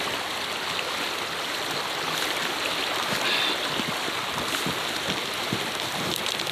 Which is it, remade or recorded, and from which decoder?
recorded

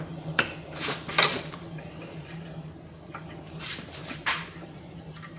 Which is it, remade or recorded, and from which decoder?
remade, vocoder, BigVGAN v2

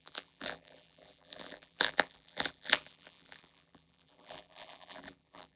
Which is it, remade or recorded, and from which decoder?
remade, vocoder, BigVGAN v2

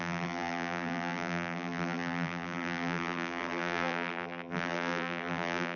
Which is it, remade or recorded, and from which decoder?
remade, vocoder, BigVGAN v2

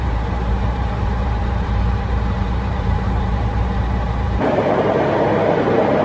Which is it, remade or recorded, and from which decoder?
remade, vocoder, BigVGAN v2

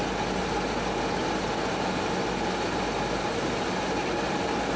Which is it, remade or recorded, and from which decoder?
recorded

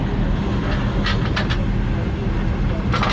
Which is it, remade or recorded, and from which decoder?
recorded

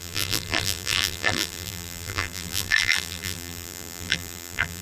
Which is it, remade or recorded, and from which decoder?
remade, vocoder, BigVGAN v2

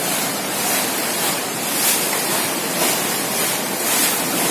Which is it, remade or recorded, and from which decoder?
remade, vocoder, BigVGAN v2